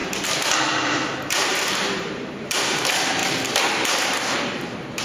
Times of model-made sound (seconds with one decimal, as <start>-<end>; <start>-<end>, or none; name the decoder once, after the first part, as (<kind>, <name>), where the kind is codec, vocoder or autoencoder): 1.3-3.2 (vocoder, BigVGAN v2)